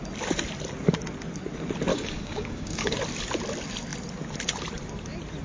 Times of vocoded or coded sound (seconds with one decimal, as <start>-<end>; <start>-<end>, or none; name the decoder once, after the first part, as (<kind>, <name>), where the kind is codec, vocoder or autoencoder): 1.9-3.0 (codec, DAC)